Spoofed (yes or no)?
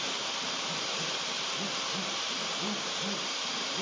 yes